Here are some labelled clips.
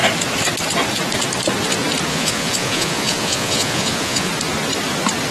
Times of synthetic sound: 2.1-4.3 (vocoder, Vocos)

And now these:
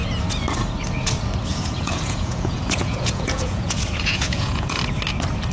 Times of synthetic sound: 1.5-4.8 (vocoder, Vocos)

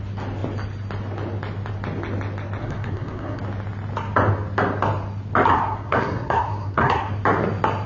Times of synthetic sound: 2.6-3.4 (codec, SNAC); 5.5-7.1

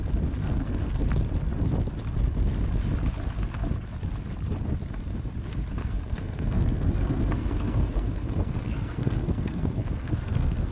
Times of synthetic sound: 0.4-1.0 (codec, SNAC); 5.8-10.7

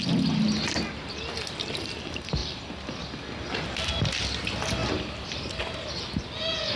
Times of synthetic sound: 4.8-5.9 (vocoder, BigVGAN v2)

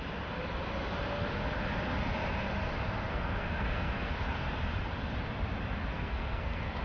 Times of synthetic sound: 3.1-4.1 (codec, SNAC); 5.9-6.8

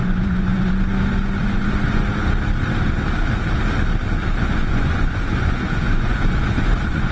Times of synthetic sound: 0.0-0.7 (vocoder, Vocos); 1.4-2.0; 4.4-7.1